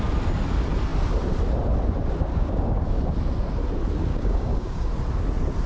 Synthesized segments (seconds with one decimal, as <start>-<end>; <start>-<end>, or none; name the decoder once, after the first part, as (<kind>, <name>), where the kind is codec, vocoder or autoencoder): 2.3-3.0 (codec, DAC); 4.1-4.9